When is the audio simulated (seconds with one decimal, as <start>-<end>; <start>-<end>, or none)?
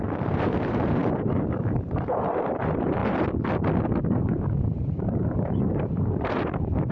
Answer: 0.0-3.0; 4.0-6.9